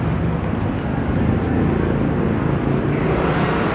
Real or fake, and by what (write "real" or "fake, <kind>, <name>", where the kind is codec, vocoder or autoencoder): real